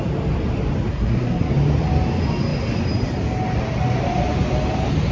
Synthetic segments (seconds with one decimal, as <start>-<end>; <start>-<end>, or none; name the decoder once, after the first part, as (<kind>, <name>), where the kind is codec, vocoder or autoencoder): 0.9-1.5 (codec, SNAC)